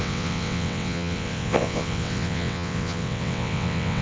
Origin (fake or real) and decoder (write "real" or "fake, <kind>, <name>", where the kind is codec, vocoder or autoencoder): fake, vocoder, WaveNeXt